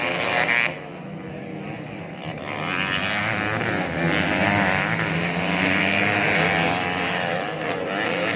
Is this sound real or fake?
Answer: real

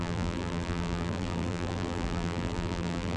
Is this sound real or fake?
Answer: fake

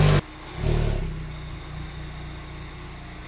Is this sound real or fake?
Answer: real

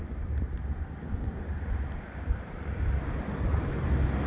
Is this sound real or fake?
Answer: fake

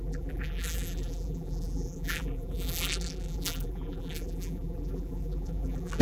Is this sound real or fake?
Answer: fake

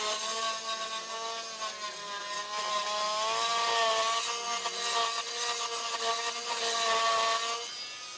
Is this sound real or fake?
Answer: real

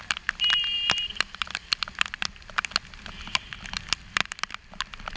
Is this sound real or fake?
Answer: real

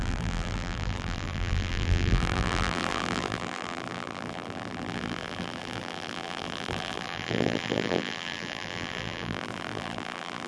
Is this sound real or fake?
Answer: fake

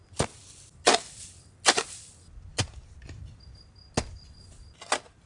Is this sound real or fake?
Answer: real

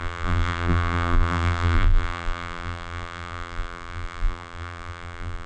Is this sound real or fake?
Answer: fake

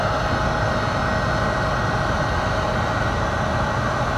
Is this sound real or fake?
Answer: real